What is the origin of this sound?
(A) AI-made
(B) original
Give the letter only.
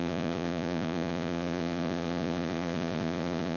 A